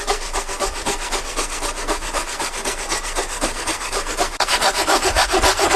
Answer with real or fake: fake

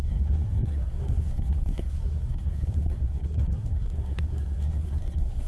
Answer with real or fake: fake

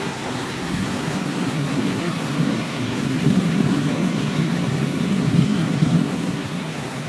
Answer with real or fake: fake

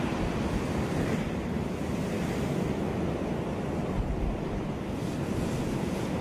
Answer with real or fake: real